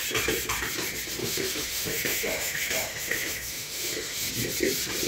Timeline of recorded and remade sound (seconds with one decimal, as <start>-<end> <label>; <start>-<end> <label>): 0.0-1.2 recorded; 1.2-4.3 remade; 4.3-5.1 recorded